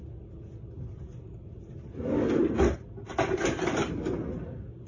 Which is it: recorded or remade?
recorded